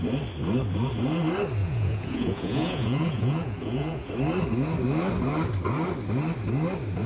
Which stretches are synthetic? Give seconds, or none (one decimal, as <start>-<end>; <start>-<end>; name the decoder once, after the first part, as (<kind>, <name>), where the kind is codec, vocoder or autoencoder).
1.6-4.1 (vocoder, Vocos)